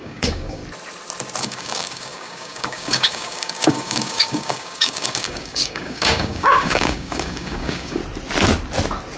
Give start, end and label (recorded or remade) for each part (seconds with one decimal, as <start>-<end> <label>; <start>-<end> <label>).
0.0-0.6 remade; 0.6-1.4 recorded; 1.4-8.0 remade; 8.0-9.2 recorded